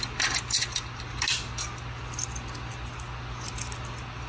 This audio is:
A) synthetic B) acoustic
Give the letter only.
B